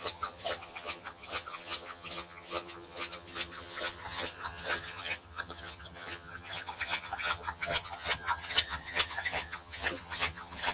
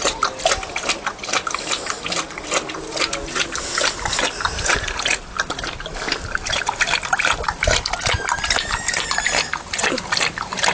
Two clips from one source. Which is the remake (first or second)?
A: first